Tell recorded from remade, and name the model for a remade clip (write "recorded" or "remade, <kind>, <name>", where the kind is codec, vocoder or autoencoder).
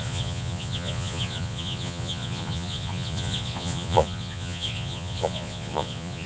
remade, vocoder, Vocos